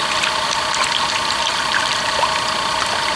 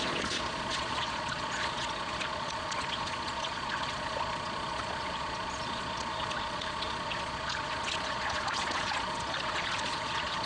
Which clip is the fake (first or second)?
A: second